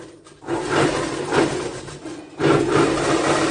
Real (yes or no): yes